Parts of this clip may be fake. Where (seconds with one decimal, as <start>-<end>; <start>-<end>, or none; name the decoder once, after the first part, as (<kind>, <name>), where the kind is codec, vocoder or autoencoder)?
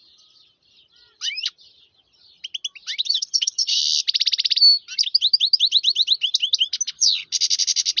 3.1-3.8 (vocoder, HiFi-GAN)